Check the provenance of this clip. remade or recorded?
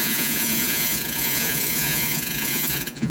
remade